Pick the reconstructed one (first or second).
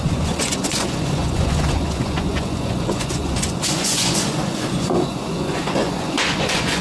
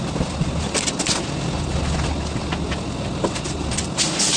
first